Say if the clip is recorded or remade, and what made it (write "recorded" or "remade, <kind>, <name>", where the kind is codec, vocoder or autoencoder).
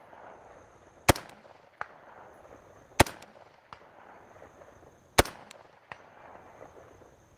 recorded